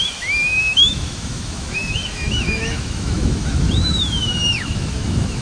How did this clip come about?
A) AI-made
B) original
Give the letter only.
A